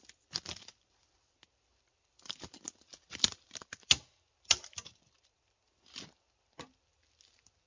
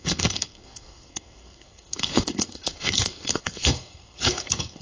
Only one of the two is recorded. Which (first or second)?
first